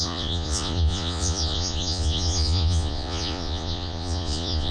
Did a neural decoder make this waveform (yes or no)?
yes